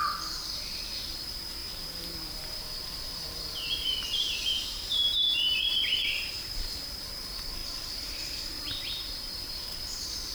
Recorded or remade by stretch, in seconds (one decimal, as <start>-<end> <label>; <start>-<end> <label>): 0.0-0.9 recorded; 0.9-10.3 remade